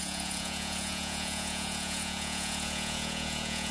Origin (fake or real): fake